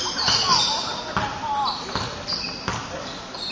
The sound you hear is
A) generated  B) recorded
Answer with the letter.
B